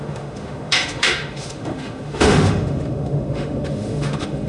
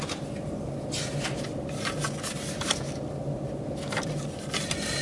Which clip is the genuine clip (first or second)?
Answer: second